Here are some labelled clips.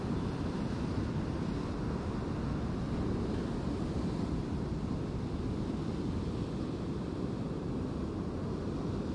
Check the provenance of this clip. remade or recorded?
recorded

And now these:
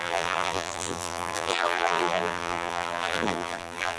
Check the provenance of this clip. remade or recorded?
remade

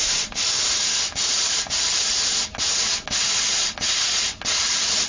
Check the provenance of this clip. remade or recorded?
recorded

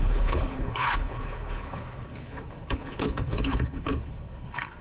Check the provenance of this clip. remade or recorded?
remade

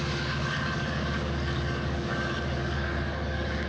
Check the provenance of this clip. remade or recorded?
remade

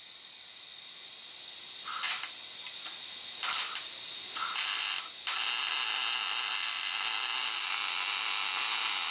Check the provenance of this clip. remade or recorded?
recorded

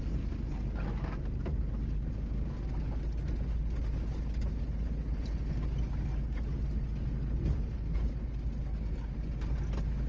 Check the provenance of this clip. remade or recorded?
recorded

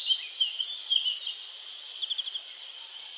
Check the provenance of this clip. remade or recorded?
recorded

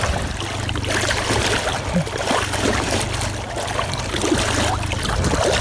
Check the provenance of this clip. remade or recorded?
recorded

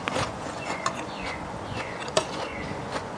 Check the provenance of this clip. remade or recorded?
remade